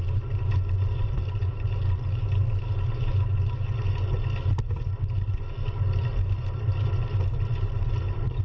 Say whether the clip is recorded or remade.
recorded